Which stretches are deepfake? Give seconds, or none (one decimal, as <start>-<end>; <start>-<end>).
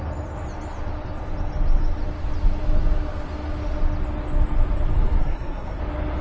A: 5.2-5.8